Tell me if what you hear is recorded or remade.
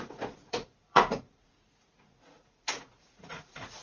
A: remade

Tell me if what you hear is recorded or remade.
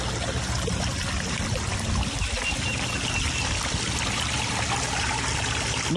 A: recorded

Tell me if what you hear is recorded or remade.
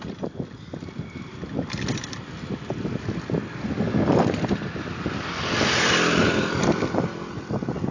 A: recorded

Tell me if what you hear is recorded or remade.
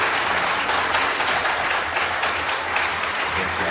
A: recorded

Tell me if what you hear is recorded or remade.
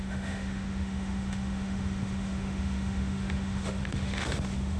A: remade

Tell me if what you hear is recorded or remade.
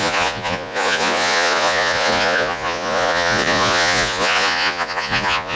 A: remade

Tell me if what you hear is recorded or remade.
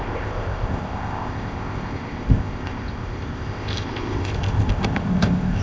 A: remade